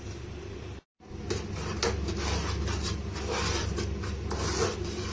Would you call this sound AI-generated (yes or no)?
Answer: no